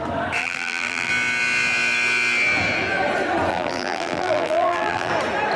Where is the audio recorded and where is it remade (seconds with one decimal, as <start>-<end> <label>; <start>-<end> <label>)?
0.0-0.4 recorded; 0.4-1.1 remade; 1.1-3.5 recorded; 3.5-5.1 remade; 5.1-5.6 recorded

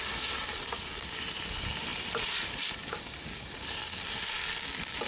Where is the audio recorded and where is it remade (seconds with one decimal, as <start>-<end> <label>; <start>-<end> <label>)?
0.0-0.4 recorded; 0.4-0.9 remade; 0.9-1.9 recorded; 1.9-4.5 remade; 4.5-5.1 recorded

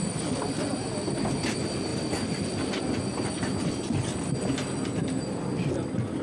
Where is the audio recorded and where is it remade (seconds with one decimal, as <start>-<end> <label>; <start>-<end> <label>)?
0.0-6.2 recorded

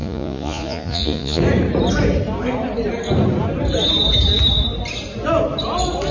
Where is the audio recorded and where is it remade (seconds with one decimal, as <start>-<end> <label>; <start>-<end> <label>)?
0.0-1.4 remade; 1.4-6.1 recorded

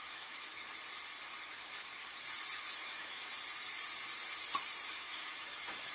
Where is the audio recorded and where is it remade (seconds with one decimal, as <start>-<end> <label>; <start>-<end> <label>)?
0.0-0.5 remade; 0.5-1.5 recorded; 1.5-1.9 remade; 1.9-2.6 recorded; 2.6-3.3 remade; 3.3-4.9 recorded; 4.9-5.9 remade

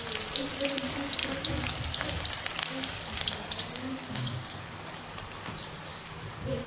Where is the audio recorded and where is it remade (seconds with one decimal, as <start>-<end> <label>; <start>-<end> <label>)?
0.0-1.2 recorded; 1.2-5.2 remade; 5.2-5.9 recorded; 5.9-6.7 remade